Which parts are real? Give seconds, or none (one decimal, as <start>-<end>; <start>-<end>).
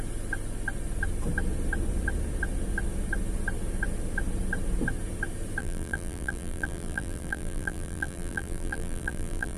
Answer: 0.0-5.6